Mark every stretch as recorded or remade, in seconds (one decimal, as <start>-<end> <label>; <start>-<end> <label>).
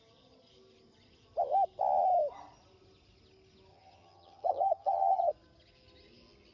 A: 0.0-3.7 recorded; 3.7-5.3 remade; 5.3-6.5 recorded